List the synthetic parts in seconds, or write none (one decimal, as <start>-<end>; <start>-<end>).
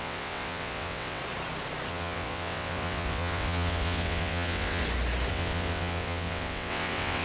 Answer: 0.0-1.2; 1.9-4.8; 5.3-7.2